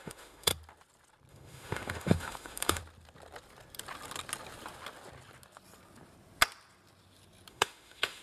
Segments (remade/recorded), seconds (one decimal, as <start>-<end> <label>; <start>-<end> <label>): 0.0-0.5 remade; 0.5-1.3 recorded; 1.3-2.8 remade; 2.8-7.5 recorded; 7.5-8.2 remade